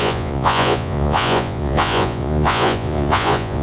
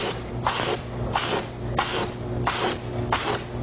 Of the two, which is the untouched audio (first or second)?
second